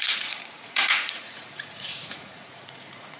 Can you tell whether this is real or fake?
fake